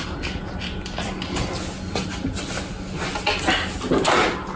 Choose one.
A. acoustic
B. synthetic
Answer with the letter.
A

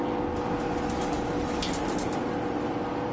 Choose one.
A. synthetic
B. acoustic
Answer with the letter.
B